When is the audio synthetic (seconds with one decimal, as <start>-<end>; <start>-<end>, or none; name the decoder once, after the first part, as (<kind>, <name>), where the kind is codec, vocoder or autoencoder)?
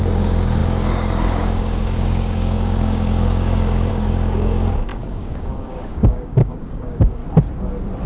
0.0-7.2 (codec, DAC)